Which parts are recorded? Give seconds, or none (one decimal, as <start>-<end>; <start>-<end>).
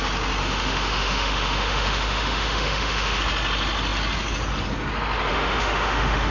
0.0-0.4; 3.2-5.3